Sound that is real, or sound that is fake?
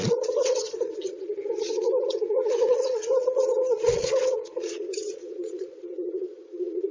fake